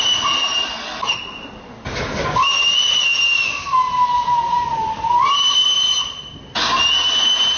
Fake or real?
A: real